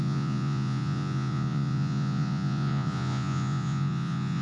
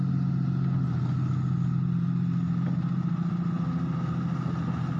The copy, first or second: first